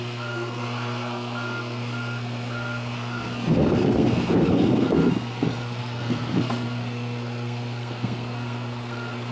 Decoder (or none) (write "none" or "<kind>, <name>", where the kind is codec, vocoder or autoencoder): codec, SNAC